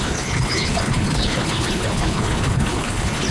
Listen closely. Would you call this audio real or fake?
fake